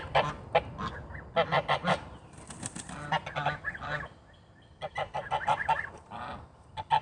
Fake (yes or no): no